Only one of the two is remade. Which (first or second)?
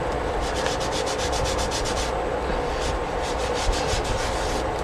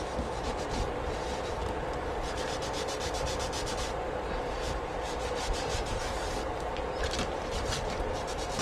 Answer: second